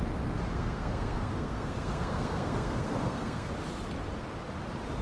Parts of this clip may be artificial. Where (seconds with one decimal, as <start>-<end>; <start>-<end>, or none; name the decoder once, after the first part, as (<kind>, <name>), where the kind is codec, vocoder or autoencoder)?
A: 0.5-3.5 (codec, SNAC)